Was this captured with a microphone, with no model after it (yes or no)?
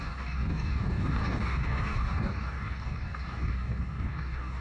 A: no